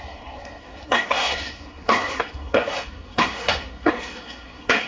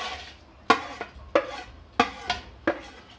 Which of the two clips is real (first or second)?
second